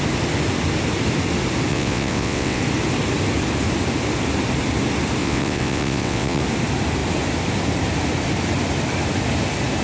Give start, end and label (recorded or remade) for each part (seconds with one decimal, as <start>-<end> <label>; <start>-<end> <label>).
0.0-1.7 recorded; 1.7-2.6 remade; 2.6-5.2 recorded; 5.2-6.4 remade; 6.4-9.8 recorded